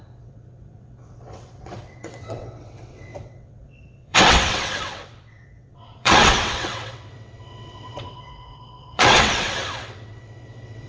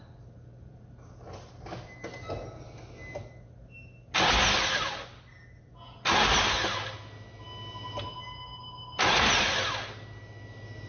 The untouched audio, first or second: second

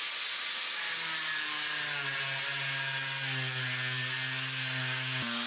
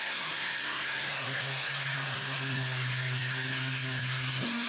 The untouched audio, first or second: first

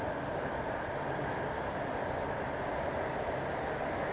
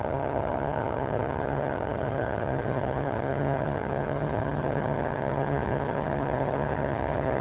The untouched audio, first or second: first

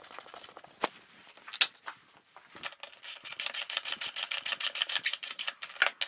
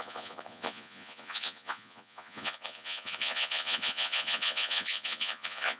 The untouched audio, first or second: first